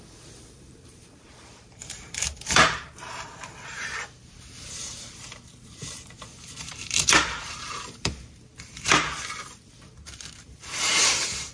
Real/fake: fake